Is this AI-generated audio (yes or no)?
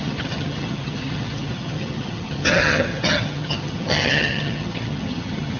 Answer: yes